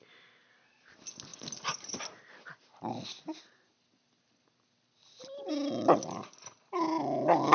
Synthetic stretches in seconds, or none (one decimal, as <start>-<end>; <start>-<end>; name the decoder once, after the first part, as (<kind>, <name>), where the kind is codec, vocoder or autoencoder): none